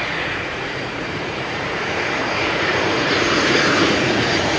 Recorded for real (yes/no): no